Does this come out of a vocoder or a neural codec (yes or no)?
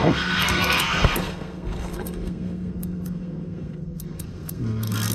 yes